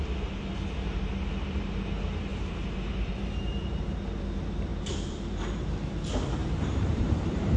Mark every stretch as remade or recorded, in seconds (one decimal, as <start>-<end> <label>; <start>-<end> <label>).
0.0-2.3 recorded; 2.3-3.1 remade; 3.1-4.7 recorded; 4.7-5.9 remade; 5.9-6.4 recorded; 6.4-7.6 remade